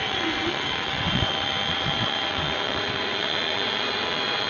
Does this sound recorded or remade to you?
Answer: remade